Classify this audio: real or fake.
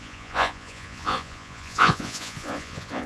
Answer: fake